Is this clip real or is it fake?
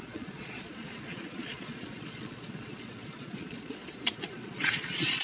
fake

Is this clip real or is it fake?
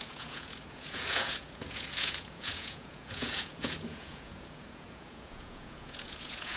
fake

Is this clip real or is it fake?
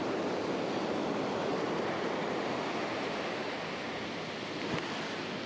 real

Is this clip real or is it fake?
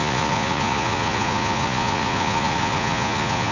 fake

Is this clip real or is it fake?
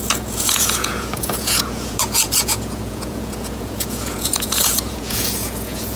fake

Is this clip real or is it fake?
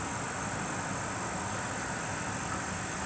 real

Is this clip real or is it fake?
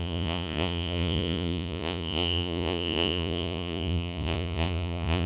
fake